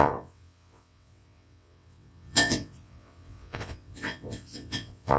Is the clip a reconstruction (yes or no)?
yes